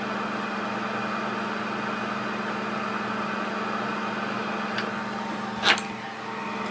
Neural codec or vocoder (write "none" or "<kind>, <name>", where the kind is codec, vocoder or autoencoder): none